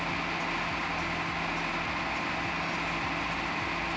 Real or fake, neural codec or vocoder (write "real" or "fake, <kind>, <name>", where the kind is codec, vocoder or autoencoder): real